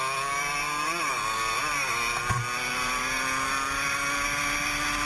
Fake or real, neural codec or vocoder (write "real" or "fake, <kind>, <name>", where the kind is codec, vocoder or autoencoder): real